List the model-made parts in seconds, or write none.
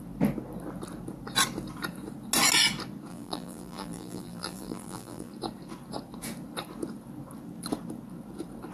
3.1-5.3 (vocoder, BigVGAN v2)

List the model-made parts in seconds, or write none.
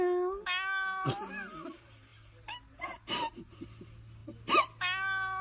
none